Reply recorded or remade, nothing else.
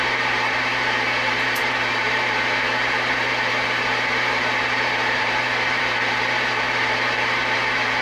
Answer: remade